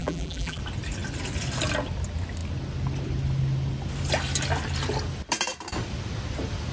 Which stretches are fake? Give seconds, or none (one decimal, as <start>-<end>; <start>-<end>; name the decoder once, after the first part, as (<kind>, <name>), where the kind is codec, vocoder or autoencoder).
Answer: 0.0-0.6 (vocoder, BigVGAN v2)